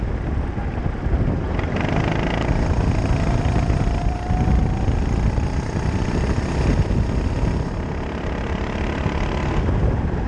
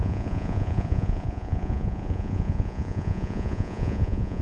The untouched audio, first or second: first